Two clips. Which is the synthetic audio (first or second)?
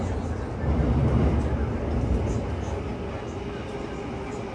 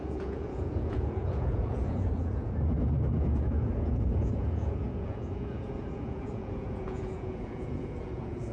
second